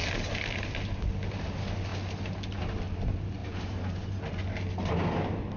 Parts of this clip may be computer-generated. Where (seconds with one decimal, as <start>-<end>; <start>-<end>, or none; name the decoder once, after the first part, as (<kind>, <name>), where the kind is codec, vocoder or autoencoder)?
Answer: 3.4-4.2 (vocoder, BigVGAN v2)